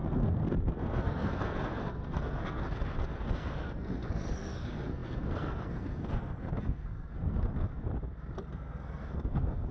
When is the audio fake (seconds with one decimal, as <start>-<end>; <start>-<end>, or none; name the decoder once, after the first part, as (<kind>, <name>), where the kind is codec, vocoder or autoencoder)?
0.0-7.9 (codec, SNAC); 8.5-9.7